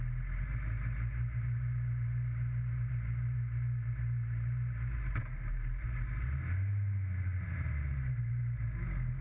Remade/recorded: recorded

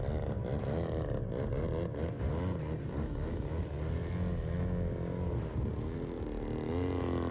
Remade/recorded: recorded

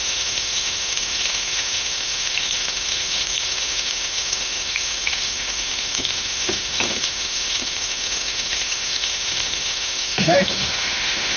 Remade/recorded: remade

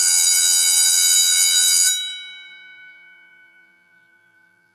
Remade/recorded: remade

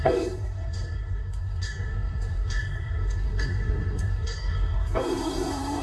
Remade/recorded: remade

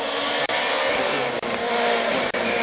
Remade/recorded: recorded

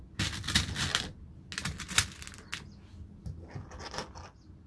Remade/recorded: recorded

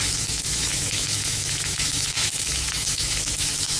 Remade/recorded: remade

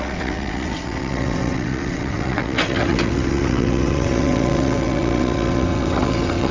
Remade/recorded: remade